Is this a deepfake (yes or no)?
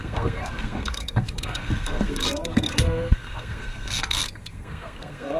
yes